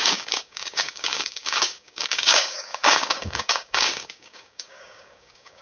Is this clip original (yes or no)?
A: no